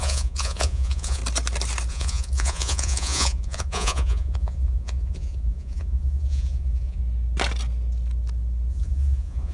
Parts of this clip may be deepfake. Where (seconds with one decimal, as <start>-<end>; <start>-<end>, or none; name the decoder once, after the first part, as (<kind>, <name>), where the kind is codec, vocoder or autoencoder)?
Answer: 0.0-1.2 (vocoder, Vocos); 1.9-7.0; 8.7-9.5